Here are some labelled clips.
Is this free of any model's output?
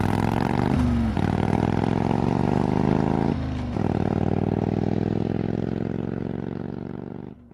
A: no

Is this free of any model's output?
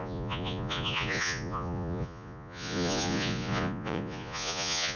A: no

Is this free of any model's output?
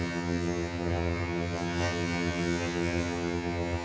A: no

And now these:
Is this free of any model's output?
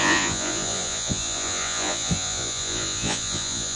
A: no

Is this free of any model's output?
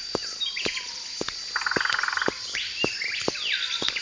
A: yes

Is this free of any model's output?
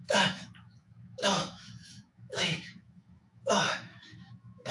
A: no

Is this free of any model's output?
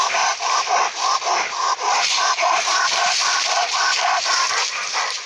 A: yes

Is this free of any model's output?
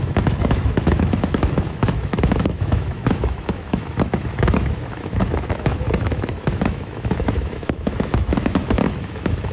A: no